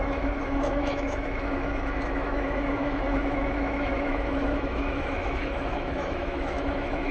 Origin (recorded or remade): remade